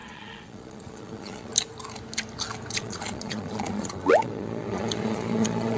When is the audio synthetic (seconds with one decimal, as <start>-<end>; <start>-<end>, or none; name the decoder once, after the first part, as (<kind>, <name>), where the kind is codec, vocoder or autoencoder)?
0.0-1.5 (vocoder, Vocos); 2.7-5.8